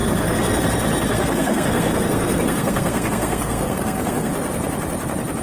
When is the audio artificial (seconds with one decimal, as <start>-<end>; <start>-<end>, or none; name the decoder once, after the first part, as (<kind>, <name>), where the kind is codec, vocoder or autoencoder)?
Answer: 0.0-0.6 (codec, SNAC); 1.1-4.3